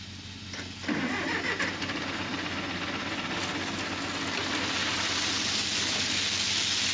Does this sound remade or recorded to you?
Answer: recorded